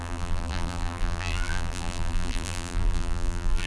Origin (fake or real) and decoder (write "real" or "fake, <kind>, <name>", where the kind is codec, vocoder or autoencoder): fake, vocoder, BigVGAN v2